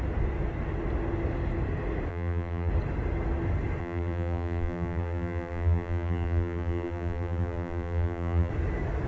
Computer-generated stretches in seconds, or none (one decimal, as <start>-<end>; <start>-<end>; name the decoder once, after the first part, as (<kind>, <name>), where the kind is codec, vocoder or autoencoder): 2.1-2.7 (vocoder, BigVGAN v2); 3.8-8.5